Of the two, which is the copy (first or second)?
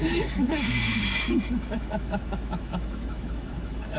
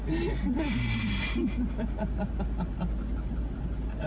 first